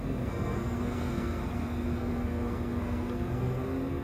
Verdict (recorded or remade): remade